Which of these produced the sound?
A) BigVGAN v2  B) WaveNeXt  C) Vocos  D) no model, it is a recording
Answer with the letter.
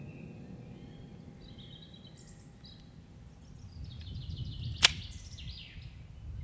D